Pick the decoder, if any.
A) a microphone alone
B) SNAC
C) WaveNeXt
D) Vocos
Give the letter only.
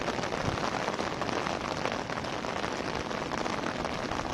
A